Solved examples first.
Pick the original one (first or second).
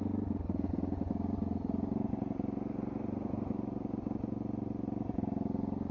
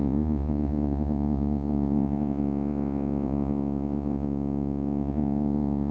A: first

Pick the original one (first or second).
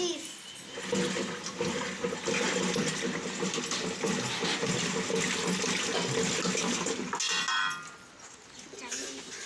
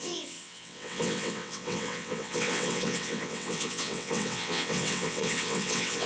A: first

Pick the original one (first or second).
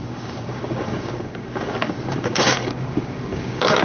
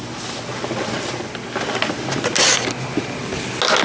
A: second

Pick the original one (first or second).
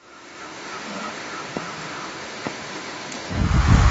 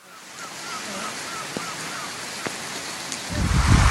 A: second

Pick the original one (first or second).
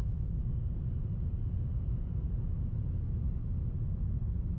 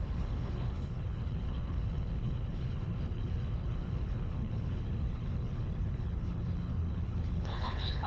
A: first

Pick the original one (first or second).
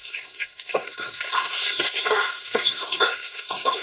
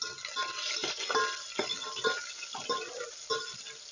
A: second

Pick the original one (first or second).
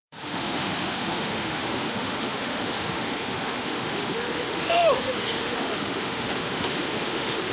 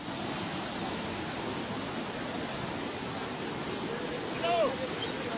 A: second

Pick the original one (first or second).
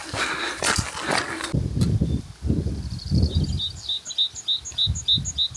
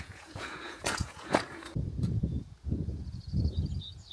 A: first